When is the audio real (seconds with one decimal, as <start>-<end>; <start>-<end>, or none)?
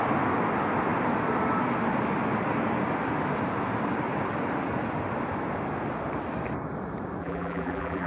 0.0-7.2